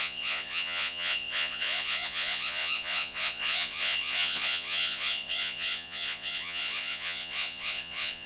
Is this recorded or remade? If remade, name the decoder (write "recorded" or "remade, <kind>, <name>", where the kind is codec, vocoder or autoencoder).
remade, vocoder, Vocos